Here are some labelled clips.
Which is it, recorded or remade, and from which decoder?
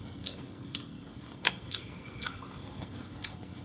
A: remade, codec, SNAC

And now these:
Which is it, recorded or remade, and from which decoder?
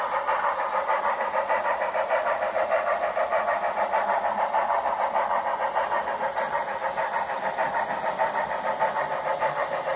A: recorded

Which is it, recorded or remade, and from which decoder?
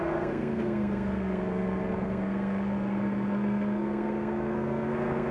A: remade, codec, SNAC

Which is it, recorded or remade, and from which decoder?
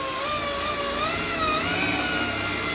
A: recorded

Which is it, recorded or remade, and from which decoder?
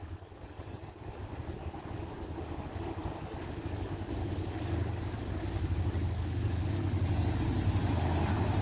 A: remade, codec, DAC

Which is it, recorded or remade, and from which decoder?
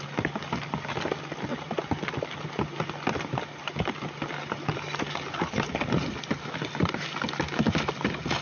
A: recorded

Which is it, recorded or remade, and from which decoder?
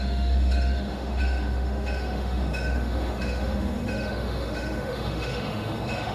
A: remade, autoencoder, DAC-VAE